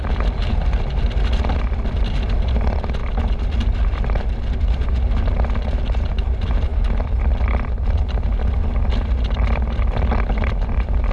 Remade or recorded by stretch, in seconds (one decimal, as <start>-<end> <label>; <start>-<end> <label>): 0.0-11.1 recorded